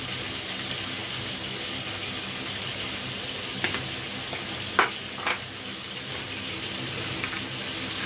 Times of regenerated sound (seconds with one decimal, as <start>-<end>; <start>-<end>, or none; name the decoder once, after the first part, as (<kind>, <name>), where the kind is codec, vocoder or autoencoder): none